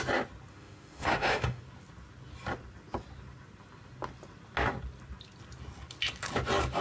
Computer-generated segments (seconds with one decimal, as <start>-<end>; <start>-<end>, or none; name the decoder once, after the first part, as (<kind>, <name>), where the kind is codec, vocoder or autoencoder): 0.5-1.6 (autoencoder, DAC-VAE)